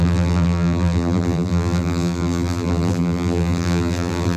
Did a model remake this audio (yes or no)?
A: yes